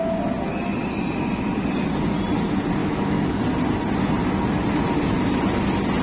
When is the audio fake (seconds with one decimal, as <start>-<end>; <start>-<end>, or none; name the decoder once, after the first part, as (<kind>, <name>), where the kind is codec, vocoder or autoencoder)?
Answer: 2.8-3.4 (autoencoder, DAC-VAE)